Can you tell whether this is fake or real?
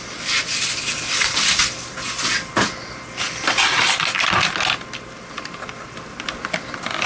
real